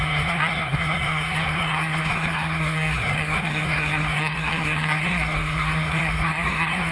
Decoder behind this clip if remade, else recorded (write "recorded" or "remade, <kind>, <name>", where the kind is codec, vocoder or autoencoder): remade, codec, SNAC